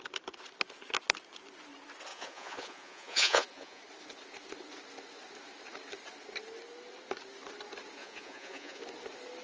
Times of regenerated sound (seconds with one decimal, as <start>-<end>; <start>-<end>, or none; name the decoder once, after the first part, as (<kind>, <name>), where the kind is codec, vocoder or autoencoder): 2.1-3.8 (vocoder, Vocos); 8.0-8.8